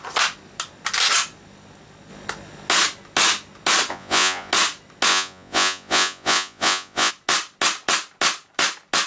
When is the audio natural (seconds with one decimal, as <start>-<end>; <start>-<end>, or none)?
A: 0.0-3.9; 4.5-5.1; 7.1-9.1